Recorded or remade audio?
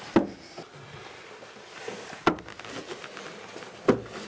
recorded